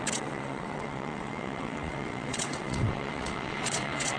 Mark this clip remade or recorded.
remade